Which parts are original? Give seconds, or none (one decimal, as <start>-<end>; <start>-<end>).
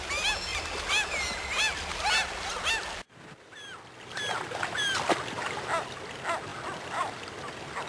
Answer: 0.0-7.9